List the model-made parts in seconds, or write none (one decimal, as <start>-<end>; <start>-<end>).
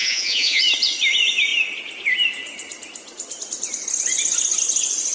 0.0-0.6